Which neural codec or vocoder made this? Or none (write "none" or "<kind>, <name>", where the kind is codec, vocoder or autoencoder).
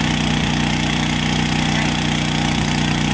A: none